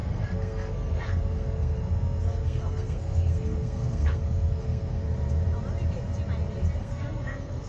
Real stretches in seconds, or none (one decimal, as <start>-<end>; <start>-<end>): 5.0-6.8